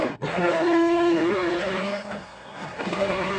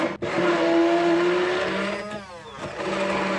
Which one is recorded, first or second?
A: second